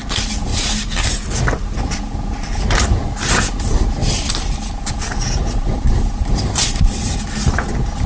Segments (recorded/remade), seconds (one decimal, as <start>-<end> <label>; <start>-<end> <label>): 0.0-4.0 recorded; 4.0-7.2 remade; 7.2-8.1 recorded